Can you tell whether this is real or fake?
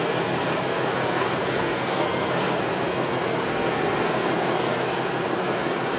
fake